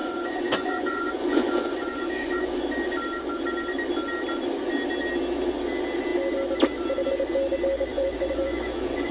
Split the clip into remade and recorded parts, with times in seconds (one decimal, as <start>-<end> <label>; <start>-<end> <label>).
0.0-2.6 remade; 2.6-7.9 recorded; 7.9-9.1 remade